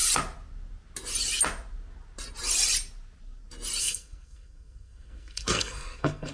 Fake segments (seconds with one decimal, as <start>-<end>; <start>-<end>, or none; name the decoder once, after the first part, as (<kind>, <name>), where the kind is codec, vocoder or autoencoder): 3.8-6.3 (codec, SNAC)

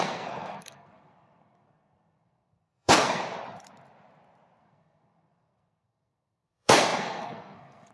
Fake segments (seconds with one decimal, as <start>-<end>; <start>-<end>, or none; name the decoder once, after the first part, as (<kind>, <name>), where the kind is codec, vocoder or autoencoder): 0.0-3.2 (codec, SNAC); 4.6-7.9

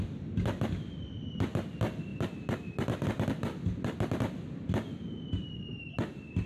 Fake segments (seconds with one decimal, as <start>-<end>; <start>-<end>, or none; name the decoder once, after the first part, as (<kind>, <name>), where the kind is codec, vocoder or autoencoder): none

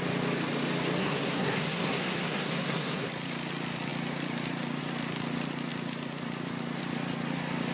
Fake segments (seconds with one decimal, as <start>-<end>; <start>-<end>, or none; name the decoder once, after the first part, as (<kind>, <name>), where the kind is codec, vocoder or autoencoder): 1.0-3.1 (codec, SNAC)